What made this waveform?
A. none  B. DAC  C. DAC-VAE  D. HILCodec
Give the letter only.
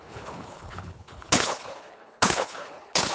D